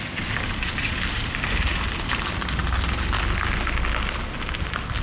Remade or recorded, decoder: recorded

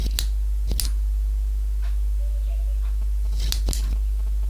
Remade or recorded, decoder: recorded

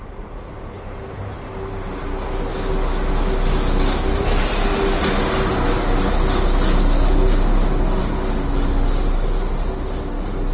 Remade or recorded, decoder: recorded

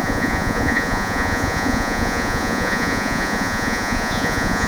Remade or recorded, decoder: remade, vocoder, Vocos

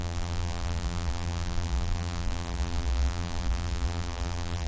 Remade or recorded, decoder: remade, vocoder, BigVGAN v2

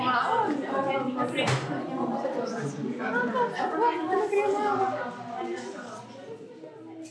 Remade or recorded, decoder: recorded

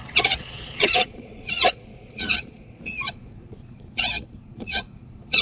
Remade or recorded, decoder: remade, vocoder, Vocos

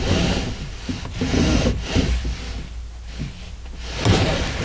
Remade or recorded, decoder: recorded